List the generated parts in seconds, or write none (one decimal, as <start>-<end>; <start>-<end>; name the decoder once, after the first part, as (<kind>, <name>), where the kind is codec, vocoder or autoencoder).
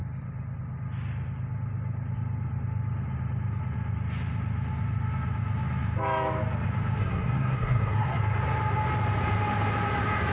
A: 7.0-8.2 (codec, SNAC)